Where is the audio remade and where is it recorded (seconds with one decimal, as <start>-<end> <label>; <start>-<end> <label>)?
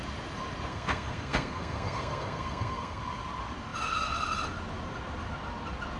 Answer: 0.0-0.7 recorded; 0.7-3.0 remade; 3.0-6.0 recorded